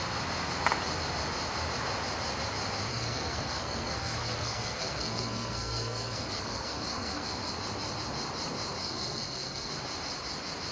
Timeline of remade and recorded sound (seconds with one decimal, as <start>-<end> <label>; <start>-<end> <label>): 0.0-2.9 recorded; 2.9-7.5 remade; 7.5-8.8 recorded; 8.8-9.7 remade; 9.7-10.7 recorded

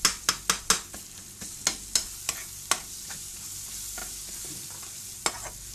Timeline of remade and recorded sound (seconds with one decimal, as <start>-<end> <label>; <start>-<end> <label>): 0.0-5.7 recorded